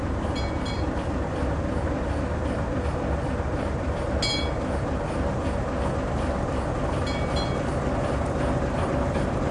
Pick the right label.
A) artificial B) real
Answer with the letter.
B